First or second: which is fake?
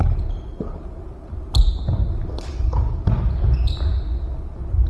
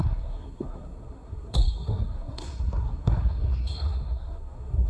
second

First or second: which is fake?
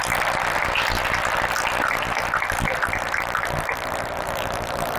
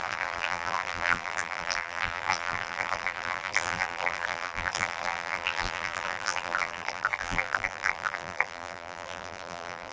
second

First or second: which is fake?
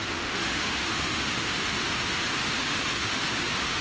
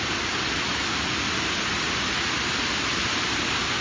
first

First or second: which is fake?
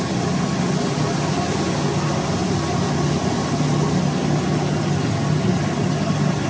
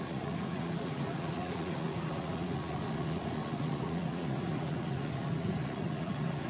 second